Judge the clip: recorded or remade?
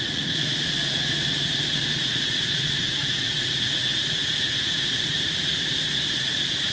remade